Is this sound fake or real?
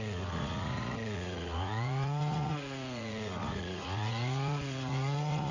fake